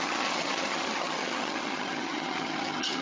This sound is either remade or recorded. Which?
remade